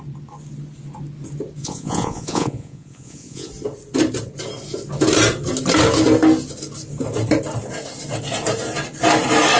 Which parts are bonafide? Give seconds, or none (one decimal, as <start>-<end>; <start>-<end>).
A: 0.0-1.6; 3.5-9.6